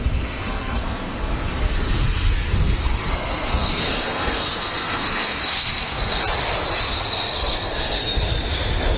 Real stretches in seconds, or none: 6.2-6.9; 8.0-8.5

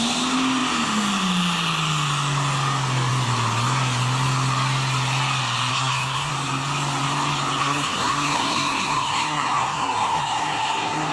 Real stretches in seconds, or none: 0.0-5.7; 6.3-7.6

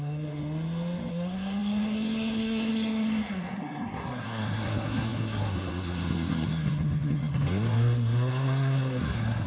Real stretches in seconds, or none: 0.4-1.1

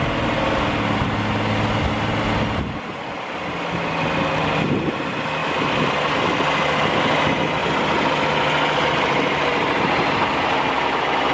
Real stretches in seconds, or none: 0.0-11.3

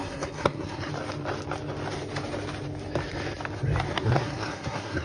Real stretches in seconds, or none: 0.9-3.9

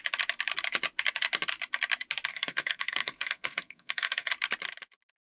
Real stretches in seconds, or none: 0.0-2.3; 4.3-5.2

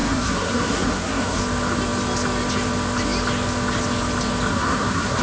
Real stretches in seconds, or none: 1.4-4.5

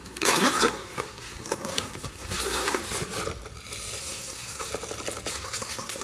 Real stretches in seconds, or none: 2.8-4.0; 4.7-5.3